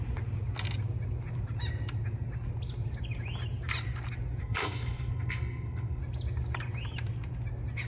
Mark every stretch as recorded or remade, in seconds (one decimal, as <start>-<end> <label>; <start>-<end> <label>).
0.0-4.4 recorded; 4.4-6.0 remade; 6.0-7.9 recorded